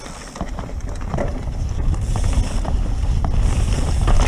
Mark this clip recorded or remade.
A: recorded